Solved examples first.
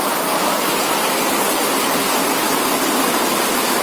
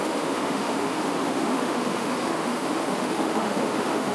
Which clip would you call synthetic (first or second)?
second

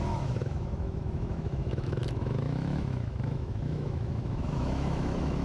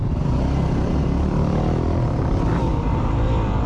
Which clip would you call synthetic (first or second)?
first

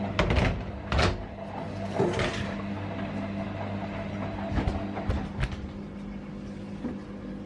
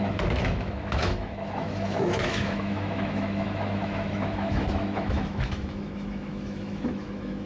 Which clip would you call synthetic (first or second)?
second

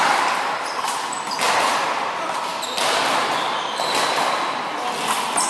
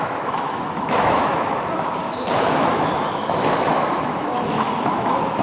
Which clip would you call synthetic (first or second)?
second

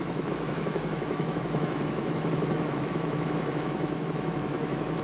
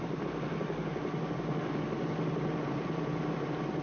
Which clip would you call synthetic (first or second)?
first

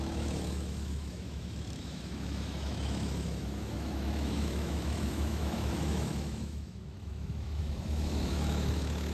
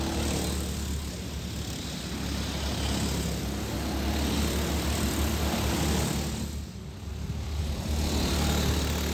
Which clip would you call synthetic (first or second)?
first